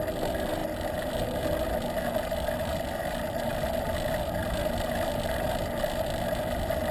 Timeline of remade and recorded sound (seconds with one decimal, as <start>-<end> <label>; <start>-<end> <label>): 0.0-6.9 recorded